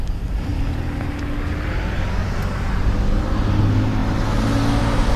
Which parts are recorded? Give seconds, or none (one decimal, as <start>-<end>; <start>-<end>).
0.0-5.2

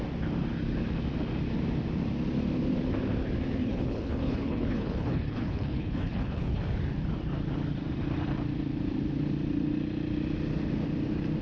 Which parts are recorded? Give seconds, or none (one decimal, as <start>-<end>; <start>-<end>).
0.0-3.6; 6.6-11.4

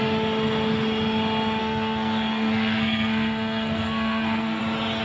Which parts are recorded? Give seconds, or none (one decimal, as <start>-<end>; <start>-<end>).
0.0-1.6; 4.6-5.0

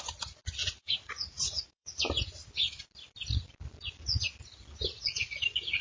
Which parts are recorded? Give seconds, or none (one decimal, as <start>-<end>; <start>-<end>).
0.0-0.6; 2.1-5.8